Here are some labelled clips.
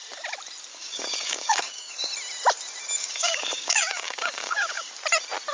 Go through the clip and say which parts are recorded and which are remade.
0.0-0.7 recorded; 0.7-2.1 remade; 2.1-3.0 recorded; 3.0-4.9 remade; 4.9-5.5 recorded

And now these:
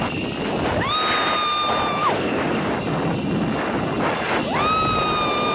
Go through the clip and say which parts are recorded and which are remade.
0.0-2.0 recorded; 2.0-2.7 remade; 2.7-5.5 recorded